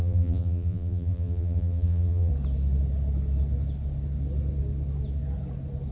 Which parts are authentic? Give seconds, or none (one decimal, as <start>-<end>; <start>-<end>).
2.3-5.9